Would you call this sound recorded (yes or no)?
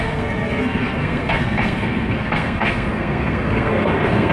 no